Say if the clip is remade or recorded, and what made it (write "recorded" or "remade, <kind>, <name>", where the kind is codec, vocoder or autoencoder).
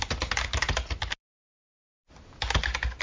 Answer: recorded